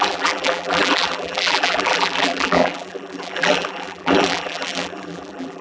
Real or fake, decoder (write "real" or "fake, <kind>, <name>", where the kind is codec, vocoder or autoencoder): fake, vocoder, BigVGAN v2